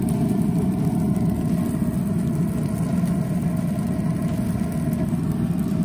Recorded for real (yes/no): yes